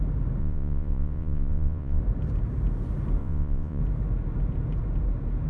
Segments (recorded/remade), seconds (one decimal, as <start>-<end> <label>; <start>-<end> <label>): 0.0-0.4 recorded; 0.4-2.0 remade; 2.0-3.2 recorded; 3.2-3.8 remade; 3.8-5.5 recorded

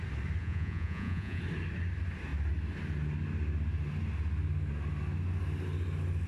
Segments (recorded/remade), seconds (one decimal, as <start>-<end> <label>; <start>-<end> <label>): 0.0-0.4 recorded; 0.4-1.4 remade; 1.4-6.3 recorded